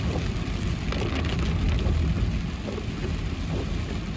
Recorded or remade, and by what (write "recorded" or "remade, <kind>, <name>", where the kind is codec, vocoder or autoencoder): recorded